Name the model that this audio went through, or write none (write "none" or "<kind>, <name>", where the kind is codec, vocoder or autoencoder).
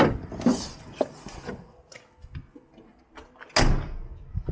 none